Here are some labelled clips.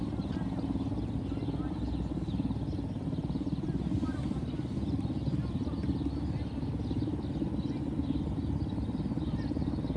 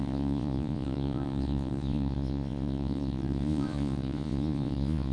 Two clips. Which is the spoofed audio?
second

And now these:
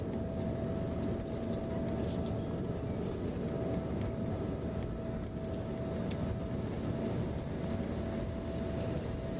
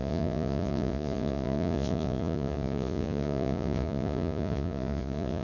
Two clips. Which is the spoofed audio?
second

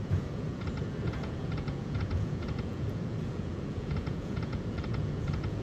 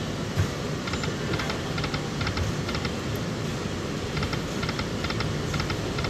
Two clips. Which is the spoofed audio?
first